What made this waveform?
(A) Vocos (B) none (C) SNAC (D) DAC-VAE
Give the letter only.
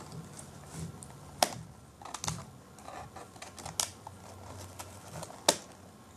B